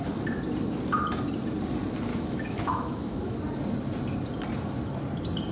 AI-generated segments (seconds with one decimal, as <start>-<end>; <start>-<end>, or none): 2.1-3.4